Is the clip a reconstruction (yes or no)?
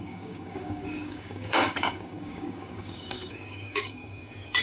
yes